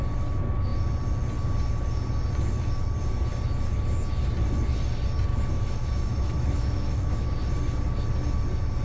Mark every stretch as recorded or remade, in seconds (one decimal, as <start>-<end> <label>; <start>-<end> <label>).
0.0-5.3 recorded; 5.3-7.5 remade; 7.5-8.8 recorded